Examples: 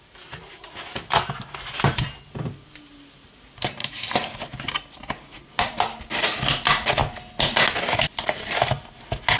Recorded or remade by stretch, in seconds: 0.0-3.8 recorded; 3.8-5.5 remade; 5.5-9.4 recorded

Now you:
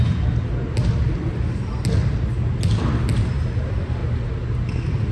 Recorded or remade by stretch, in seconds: 0.0-5.1 recorded

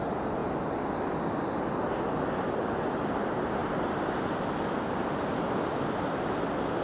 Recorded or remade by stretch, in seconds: 0.0-6.8 recorded

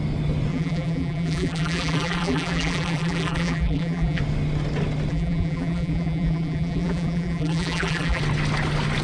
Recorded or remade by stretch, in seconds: 0.0-0.5 recorded; 0.5-4.2 remade; 4.2-5.1 recorded; 5.1-8.2 remade; 8.2-9.0 recorded

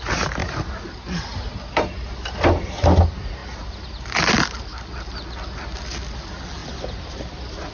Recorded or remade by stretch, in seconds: 0.0-0.4 recorded; 0.4-0.9 remade; 0.9-6.6 recorded; 6.6-7.7 remade

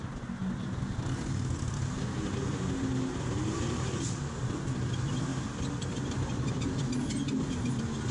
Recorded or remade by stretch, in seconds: 0.0-5.3 recorded; 5.3-6.8 remade; 6.8-8.1 recorded

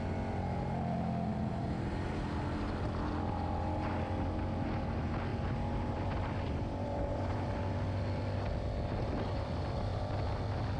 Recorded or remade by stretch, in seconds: 0.0-1.3 recorded; 1.3-2.1 remade; 2.1-5.3 recorded; 5.3-7.5 remade; 7.5-10.8 recorded

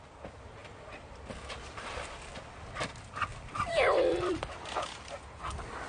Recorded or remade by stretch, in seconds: 0.0-0.6 recorded; 0.6-2.3 remade; 2.3-3.3 recorded; 3.3-4.8 remade; 4.8-5.9 recorded